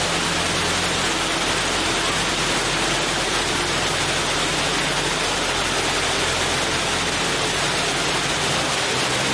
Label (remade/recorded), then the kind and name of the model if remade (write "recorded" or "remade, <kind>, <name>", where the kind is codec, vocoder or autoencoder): recorded